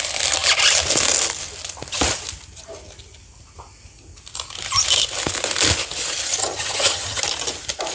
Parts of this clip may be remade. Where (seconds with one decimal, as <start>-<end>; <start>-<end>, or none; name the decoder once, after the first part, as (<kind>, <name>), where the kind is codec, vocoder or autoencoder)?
6.4-7.2 (vocoder, HiFi-GAN)